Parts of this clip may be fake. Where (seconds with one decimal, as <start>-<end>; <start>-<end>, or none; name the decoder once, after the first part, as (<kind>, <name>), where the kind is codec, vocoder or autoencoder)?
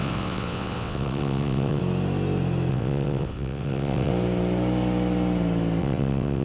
0.0-1.8 (vocoder, WaveNeXt); 2.7-4.1; 5.8-6.4